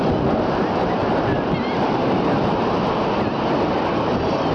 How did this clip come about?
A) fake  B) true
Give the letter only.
B